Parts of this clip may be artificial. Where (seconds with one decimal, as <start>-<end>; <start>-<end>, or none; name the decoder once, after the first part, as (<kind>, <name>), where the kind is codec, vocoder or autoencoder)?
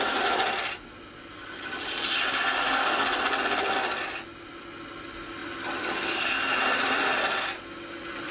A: none